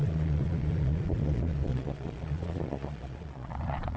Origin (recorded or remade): remade